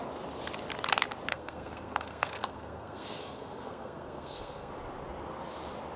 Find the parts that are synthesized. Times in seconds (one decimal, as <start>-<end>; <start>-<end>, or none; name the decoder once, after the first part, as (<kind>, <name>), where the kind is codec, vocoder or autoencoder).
1.3-4.7 (codec, SNAC)